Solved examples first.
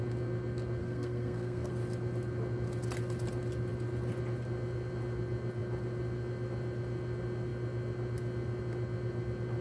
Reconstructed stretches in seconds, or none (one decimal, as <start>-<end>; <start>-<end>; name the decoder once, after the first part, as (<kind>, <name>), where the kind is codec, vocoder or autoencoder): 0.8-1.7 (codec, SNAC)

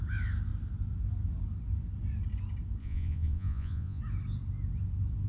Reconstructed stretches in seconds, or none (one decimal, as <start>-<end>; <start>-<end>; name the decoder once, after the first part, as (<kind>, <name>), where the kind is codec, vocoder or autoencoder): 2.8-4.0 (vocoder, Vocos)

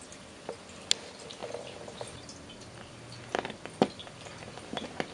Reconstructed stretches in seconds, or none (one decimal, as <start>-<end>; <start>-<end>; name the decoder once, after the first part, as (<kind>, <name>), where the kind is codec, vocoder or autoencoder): none